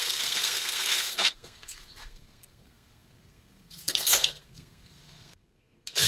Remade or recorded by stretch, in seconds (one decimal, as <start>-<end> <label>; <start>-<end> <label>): 0.0-6.1 remade